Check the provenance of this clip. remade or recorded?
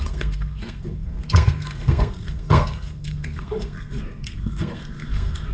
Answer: remade